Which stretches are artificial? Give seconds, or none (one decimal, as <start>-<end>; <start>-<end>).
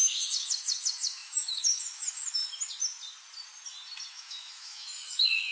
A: 0.0-2.4; 4.1-5.5